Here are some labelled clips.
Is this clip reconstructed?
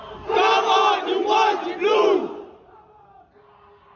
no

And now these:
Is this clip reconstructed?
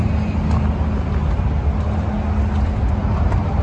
no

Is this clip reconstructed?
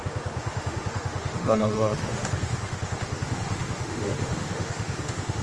yes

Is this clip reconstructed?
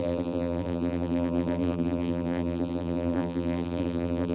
yes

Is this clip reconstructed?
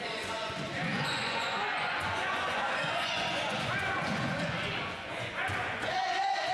yes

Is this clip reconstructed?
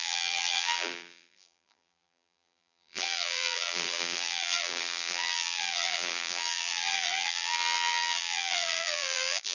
yes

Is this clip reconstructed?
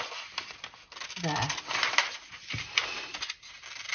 no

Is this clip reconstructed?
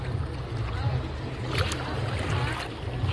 no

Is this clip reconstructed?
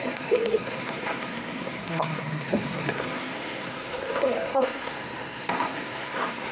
yes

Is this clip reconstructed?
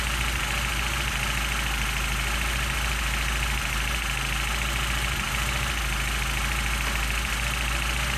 no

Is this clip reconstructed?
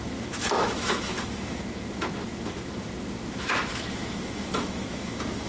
yes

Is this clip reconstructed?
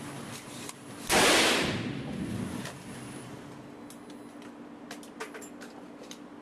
no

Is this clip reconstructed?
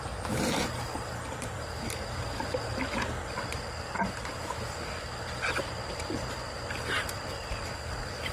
yes